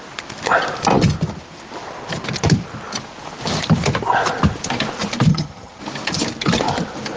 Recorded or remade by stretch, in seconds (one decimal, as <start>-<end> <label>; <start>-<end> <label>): 0.0-5.3 recorded; 5.3-5.8 remade; 5.8-7.2 recorded